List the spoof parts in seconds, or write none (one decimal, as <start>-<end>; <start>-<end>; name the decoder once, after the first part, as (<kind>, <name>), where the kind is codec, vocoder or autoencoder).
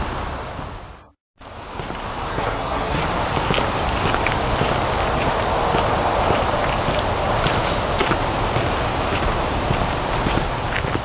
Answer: 2.3-3.0 (codec, SNAC)